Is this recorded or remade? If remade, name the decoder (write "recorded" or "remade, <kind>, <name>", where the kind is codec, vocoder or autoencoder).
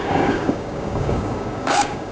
remade, codec, DAC